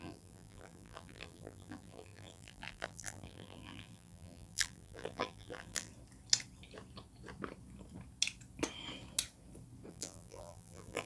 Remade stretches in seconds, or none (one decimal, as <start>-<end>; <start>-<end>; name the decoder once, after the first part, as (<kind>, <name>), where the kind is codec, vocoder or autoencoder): 0.0-5.9 (vocoder, BigVGAN v2); 9.9-11.1